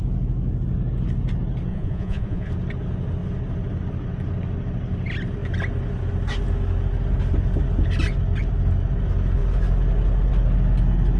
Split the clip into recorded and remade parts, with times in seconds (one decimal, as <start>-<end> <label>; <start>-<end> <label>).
0.0-1.7 recorded; 1.7-2.5 remade; 2.5-11.2 recorded